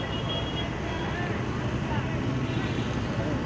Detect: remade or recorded recorded